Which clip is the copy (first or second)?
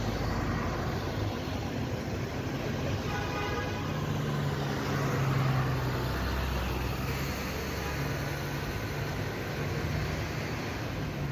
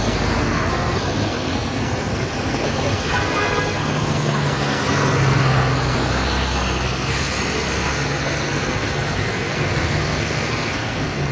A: second